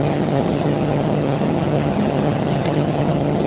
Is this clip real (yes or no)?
no